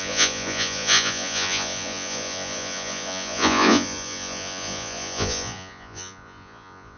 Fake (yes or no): yes